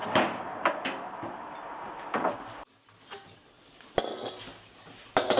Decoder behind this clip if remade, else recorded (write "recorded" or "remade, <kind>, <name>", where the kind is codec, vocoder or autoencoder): recorded